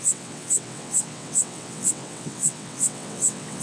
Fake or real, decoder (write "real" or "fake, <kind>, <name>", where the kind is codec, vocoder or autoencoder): fake, vocoder, WaveNeXt